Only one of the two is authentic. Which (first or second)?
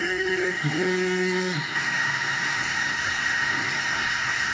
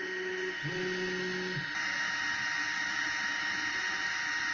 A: second